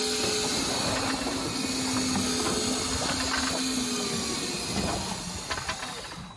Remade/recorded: recorded